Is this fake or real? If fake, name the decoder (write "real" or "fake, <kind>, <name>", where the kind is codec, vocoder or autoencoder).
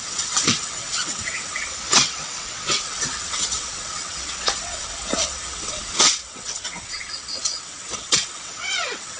fake, vocoder, WaveNeXt